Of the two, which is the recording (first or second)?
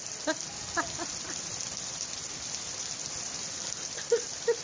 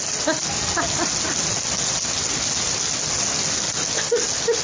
second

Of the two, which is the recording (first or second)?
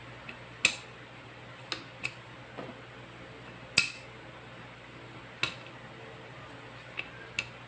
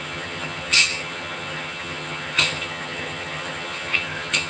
first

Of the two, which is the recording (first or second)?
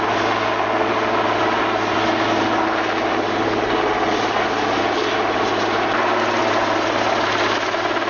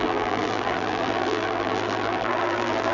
first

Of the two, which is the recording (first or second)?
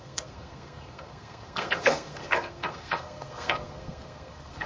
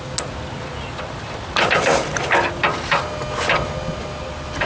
second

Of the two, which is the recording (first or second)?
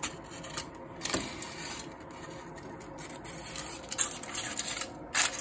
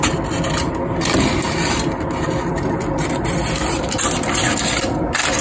first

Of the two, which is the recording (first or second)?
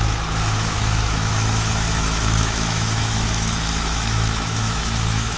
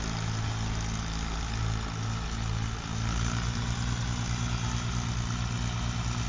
second